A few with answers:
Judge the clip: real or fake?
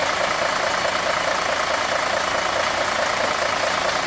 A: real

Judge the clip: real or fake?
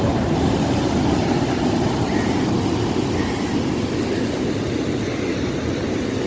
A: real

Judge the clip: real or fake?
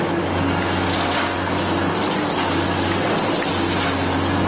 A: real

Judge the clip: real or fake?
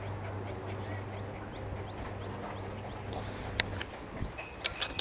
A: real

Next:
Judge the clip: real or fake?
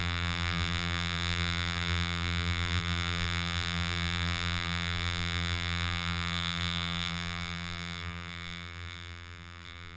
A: fake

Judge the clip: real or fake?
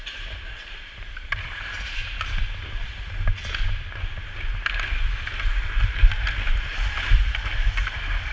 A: real